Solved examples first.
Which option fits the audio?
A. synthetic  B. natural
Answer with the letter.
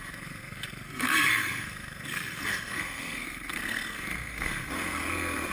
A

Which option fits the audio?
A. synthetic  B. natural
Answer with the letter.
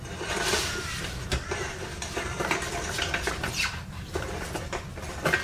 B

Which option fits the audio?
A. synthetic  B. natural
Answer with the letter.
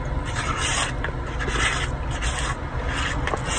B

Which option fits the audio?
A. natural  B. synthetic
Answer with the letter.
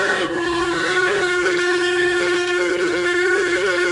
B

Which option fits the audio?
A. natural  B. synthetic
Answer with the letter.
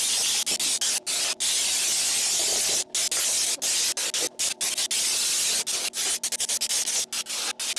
A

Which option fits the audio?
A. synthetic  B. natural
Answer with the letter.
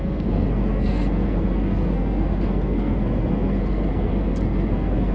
A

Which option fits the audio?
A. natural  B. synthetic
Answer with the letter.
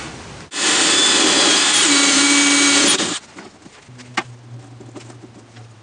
A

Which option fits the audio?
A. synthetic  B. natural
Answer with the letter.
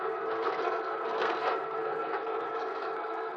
A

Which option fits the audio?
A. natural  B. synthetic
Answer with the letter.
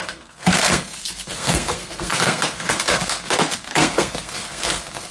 B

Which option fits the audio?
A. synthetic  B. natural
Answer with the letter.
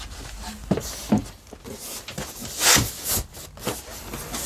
B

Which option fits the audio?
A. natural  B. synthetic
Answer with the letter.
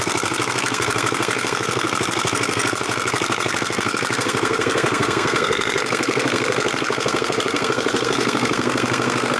B